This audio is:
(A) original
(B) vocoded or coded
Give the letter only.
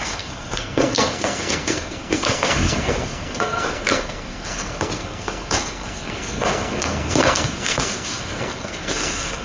B